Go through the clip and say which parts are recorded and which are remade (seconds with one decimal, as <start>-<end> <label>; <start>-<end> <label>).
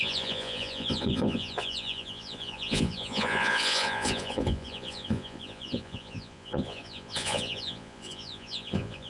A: 0.0-9.1 remade